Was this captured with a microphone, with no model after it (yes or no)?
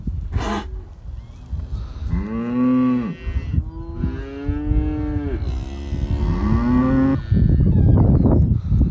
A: yes